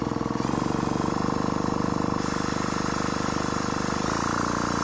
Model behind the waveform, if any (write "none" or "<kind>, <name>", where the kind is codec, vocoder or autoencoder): none